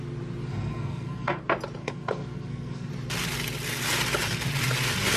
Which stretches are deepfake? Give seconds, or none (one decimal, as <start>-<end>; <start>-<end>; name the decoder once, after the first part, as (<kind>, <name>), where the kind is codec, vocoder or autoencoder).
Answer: 0.5-1.4 (codec, SNAC); 1.8-2.9